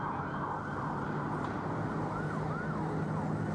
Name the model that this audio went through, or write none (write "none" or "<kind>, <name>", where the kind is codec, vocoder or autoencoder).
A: none